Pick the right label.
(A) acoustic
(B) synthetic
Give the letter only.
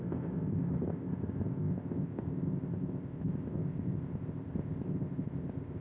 B